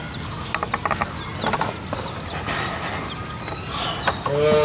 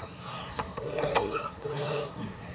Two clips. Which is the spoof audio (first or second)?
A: second